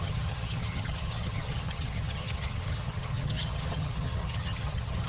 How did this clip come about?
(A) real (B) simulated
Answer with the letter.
B